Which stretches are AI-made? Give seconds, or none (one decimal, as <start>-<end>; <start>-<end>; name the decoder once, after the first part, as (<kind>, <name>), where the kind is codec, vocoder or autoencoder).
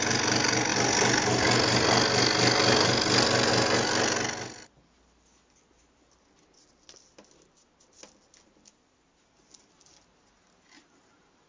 none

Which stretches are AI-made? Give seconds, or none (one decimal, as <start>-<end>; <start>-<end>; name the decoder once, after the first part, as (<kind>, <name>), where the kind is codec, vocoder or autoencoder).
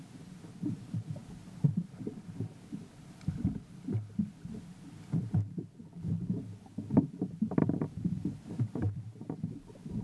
7.6-9.0 (vocoder, BigVGAN v2)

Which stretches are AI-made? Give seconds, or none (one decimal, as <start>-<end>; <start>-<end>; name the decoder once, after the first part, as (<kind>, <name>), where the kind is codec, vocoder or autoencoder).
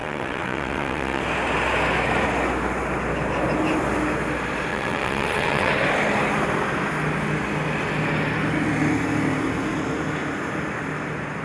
0.0-1.2 (vocoder, WaveNeXt); 4.7-5.7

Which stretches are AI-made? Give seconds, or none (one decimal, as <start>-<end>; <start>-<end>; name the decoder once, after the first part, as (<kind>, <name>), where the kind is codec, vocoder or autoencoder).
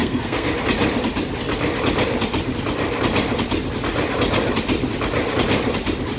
0.0-0.5 (codec, SNAC)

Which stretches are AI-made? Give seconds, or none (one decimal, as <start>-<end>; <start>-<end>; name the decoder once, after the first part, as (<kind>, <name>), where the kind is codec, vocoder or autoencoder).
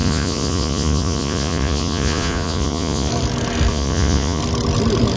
0.0-3.1 (vocoder, Vocos); 3.7-4.4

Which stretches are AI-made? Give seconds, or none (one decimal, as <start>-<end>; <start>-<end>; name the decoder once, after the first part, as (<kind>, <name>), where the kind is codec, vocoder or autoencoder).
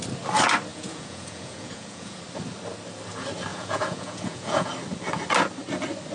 0.7-2.2 (vocoder, Vocos); 3.5-4.7